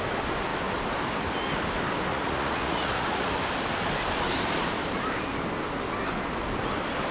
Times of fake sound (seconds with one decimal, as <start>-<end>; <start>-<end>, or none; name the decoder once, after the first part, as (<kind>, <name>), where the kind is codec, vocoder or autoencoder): 2.1-3.3 (vocoder, Vocos)